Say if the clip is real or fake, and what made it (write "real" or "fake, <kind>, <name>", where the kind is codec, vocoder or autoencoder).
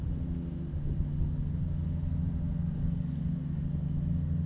real